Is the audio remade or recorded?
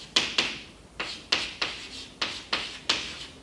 recorded